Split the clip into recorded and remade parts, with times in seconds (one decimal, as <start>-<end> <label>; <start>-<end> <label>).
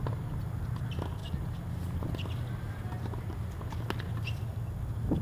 0.0-5.2 recorded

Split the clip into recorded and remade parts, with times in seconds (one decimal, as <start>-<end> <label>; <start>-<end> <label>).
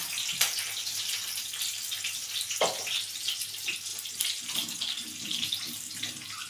0.0-6.5 recorded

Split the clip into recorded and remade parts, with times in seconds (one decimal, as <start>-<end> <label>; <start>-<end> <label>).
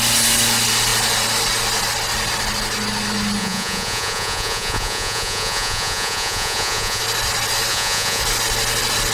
0.0-3.4 recorded; 3.4-7.0 remade; 7.0-7.7 recorded; 7.7-8.2 remade; 8.2-9.1 recorded